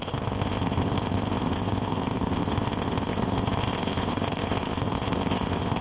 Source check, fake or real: fake